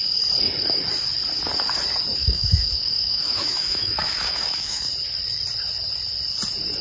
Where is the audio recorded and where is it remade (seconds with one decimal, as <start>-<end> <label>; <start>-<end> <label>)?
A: 0.0-2.2 recorded; 2.2-4.9 remade; 4.9-6.8 recorded